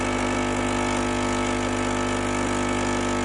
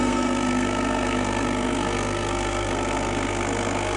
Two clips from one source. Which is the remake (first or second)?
second